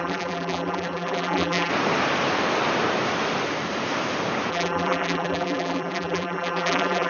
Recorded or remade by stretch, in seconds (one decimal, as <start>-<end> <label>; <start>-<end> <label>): 0.0-1.7 remade; 1.7-4.5 recorded; 4.5-7.1 remade